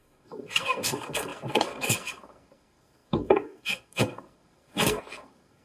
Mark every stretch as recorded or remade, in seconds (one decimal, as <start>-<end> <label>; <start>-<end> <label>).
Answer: 0.0-5.6 remade